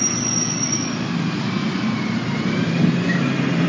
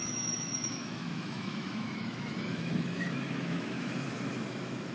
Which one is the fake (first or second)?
second